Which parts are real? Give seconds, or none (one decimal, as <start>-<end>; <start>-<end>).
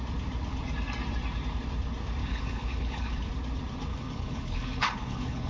0.0-2.2; 3.3-3.9